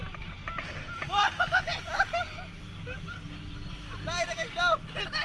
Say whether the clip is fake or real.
real